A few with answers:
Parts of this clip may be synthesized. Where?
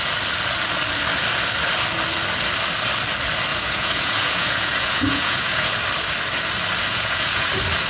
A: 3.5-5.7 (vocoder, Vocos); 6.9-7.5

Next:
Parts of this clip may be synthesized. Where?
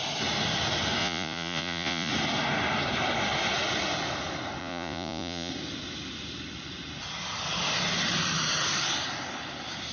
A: 1.0-2.1 (vocoder, Vocos); 4.6-5.5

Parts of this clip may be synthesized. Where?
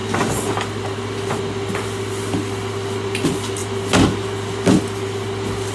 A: none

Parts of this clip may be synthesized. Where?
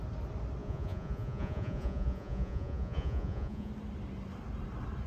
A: 0.6-3.7 (vocoder, Vocos)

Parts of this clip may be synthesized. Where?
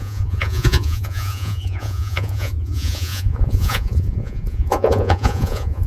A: 0.0-5.9 (vocoder, Vocos)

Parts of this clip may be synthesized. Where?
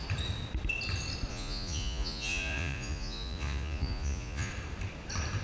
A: 1.3-4.5 (vocoder, Vocos)